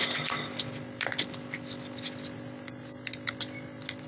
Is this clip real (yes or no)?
yes